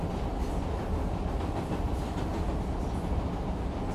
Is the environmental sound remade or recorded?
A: recorded